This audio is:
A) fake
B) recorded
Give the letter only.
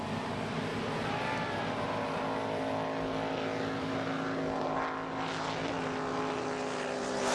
B